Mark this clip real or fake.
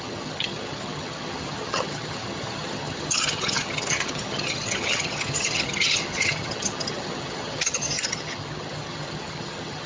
fake